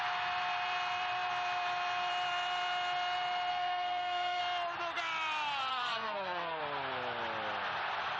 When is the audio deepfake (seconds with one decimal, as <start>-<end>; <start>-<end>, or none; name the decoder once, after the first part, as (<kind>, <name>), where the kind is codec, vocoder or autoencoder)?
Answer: 3.5-4.4 (codec, SNAC); 5.7-6.6